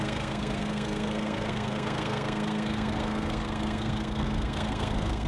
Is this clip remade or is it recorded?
remade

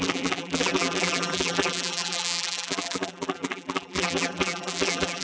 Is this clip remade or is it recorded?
remade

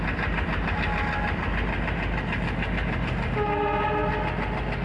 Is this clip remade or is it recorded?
recorded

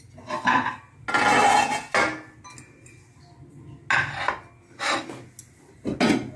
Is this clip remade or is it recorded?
recorded